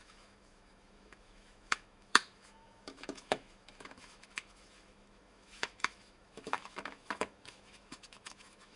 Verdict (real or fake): fake